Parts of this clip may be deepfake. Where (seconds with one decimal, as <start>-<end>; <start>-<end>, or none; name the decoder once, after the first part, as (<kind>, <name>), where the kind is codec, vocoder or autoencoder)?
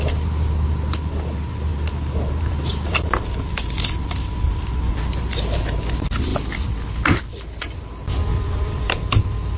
1.7-5.1 (vocoder, BigVGAN v2); 8.3-9.2